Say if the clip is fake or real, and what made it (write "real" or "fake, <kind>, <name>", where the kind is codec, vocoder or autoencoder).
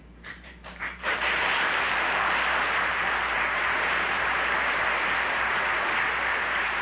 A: fake, vocoder, BigVGAN v2